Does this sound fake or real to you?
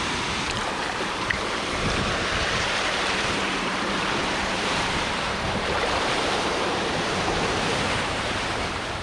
fake